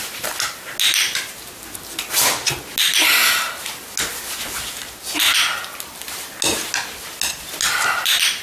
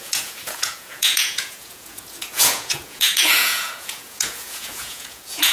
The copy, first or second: second